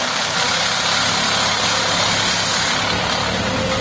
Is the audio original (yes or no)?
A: yes